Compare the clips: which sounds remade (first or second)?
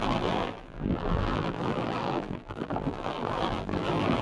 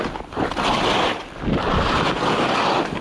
first